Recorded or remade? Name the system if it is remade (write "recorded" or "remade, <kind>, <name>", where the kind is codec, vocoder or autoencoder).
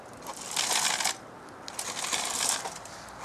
recorded